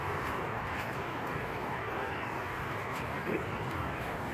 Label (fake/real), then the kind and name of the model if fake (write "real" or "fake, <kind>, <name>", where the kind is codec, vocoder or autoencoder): fake, codec, DAC